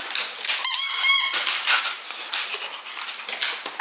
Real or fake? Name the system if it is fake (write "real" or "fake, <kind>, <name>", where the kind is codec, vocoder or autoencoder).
real